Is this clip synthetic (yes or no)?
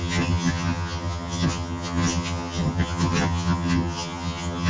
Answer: yes